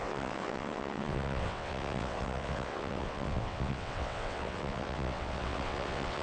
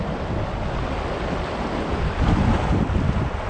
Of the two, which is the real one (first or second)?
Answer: second